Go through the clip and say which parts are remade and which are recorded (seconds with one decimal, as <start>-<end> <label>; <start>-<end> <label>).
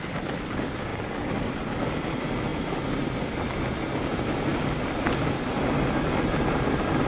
0.0-7.1 recorded